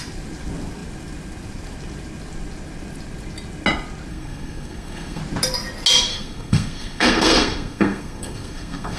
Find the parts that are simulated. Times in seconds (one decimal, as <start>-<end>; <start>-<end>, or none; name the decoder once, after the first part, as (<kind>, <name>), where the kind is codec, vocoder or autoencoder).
4.1-5.2 (codec, SNAC); 6.1-9.0